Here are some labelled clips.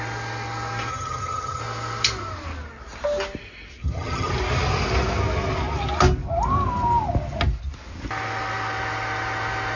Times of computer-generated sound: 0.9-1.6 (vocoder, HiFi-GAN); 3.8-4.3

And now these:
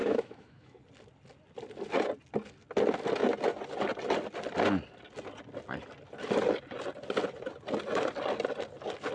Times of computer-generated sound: 0.0-0.8 (autoencoder, DAC-VAE)

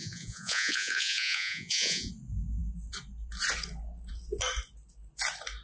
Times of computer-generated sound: 0.0-2.1 (vocoder, Vocos)